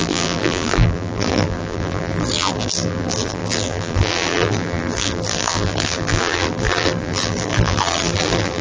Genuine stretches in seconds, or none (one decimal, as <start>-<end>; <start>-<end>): none